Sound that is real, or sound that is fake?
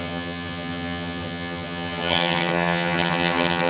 fake